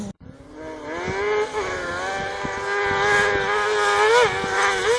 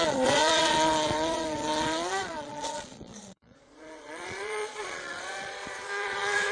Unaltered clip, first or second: first